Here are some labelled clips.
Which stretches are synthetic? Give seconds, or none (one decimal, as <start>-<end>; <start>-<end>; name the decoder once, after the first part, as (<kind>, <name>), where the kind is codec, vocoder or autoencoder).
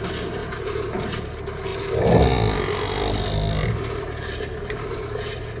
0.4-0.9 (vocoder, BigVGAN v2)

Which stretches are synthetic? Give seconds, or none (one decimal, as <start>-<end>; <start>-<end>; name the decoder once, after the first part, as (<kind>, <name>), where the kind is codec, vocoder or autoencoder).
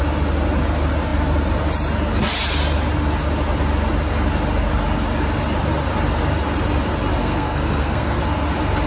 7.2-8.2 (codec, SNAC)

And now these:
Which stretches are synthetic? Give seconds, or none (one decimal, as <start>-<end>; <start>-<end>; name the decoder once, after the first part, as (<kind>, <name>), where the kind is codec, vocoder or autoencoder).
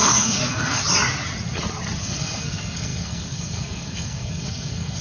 0.0-0.8 (codec, SNAC); 2.0-5.0